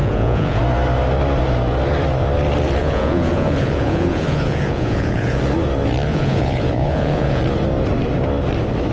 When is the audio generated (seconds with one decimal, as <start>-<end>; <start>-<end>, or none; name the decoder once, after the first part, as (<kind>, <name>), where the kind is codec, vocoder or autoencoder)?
0.0-0.6 (vocoder, Vocos); 2.8-5.4; 6.1-7.4

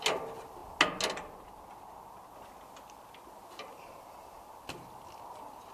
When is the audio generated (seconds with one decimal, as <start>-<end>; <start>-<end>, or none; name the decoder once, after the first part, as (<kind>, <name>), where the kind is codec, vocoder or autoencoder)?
none